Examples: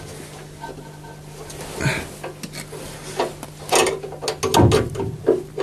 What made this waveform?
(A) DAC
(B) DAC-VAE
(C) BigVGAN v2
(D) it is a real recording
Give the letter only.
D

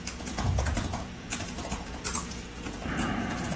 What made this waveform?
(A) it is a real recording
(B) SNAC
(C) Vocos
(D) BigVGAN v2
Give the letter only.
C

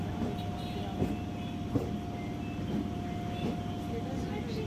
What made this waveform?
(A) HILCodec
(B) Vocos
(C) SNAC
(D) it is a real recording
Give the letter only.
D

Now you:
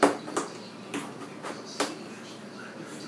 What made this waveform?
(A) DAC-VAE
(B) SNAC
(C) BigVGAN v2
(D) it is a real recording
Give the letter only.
D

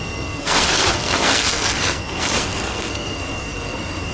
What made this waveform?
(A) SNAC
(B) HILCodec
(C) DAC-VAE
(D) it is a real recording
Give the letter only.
A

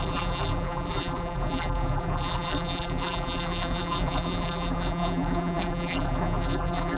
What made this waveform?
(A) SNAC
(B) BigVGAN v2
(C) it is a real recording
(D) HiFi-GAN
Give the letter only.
B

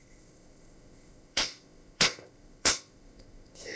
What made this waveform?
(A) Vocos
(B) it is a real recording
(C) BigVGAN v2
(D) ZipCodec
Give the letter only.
D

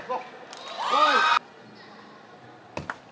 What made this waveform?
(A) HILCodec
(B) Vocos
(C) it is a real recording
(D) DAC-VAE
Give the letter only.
C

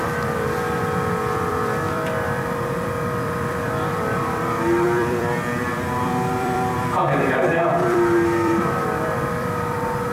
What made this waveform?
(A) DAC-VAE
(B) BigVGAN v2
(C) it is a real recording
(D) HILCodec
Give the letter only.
B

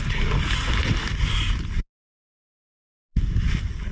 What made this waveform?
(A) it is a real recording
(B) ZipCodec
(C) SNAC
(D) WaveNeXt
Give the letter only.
A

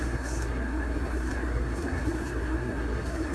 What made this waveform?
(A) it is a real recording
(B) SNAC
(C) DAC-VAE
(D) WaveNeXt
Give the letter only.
B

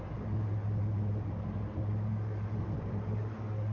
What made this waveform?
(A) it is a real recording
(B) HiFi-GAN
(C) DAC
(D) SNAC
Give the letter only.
A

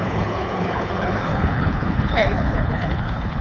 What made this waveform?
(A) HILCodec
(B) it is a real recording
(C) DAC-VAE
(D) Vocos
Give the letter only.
A